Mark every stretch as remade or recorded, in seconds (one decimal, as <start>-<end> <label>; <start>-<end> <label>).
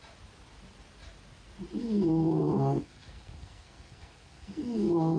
0.0-1.8 recorded; 1.8-5.2 remade